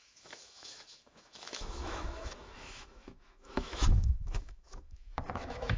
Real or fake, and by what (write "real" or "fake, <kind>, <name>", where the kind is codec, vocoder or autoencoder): fake, autoencoder, DAC-VAE